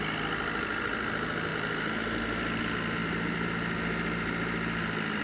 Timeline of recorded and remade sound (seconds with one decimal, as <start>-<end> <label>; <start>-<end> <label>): 0.0-5.2 recorded